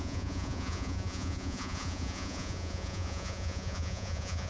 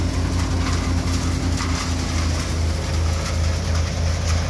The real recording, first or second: second